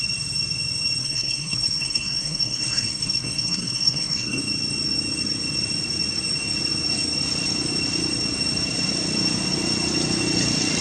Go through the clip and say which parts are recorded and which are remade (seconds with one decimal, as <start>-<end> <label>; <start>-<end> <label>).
0.0-1.0 recorded; 1.0-4.4 remade; 4.4-10.8 recorded